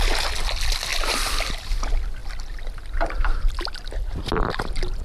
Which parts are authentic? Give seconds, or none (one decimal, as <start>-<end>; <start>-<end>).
0.0-5.0